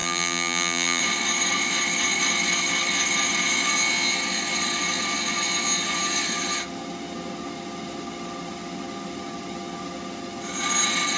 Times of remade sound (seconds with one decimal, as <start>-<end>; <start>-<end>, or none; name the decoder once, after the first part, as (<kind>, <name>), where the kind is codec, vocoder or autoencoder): 0.0-1.0 (vocoder, BigVGAN v2)